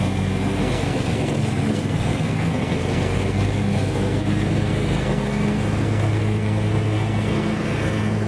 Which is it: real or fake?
fake